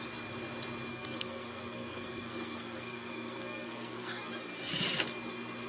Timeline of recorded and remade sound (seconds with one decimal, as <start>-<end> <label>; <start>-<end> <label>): 0.0-0.9 recorded; 0.9-4.3 remade; 4.3-5.7 recorded